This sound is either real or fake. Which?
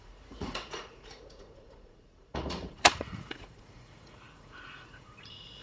fake